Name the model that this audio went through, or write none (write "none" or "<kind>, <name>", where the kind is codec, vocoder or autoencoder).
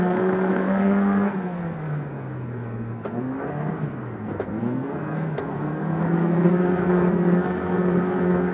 codec, SNAC